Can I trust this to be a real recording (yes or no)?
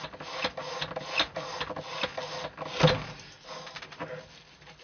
yes